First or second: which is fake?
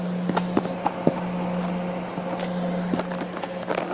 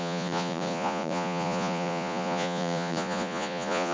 second